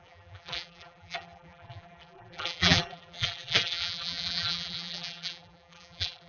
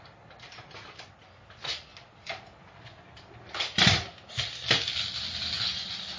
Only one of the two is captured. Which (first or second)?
second